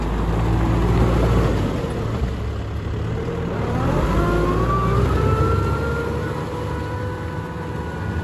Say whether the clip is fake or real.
real